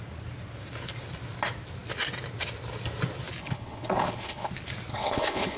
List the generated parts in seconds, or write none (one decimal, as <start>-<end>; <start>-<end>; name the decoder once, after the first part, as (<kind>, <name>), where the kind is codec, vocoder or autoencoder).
3.4-4.5 (codec, HILCodec); 4.9-5.6